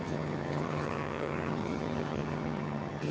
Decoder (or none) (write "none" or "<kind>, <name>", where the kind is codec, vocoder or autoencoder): vocoder, HiFi-GAN